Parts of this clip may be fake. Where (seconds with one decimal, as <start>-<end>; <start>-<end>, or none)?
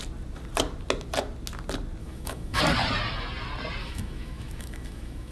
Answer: 2.0-2.6; 3.8-5.3